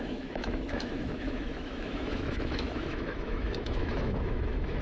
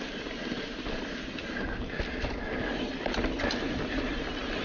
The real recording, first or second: second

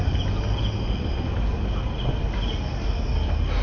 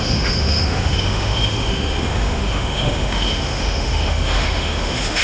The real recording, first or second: first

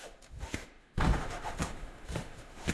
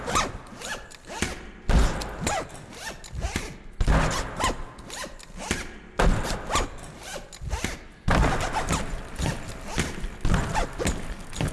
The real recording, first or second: second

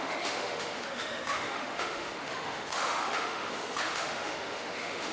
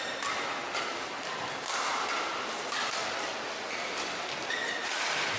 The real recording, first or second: second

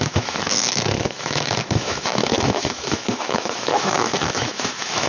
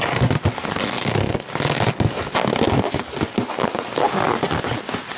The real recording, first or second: second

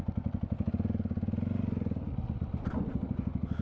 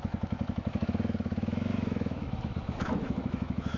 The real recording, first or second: first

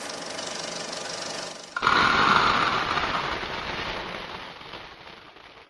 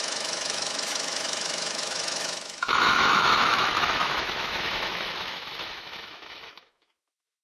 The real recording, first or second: first